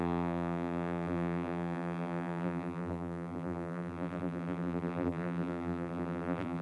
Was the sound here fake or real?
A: fake